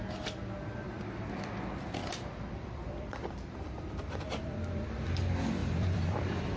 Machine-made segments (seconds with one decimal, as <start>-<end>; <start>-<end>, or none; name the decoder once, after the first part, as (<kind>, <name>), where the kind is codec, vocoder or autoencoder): 2.0-5.1 (vocoder, BigVGAN v2); 5.6-6.6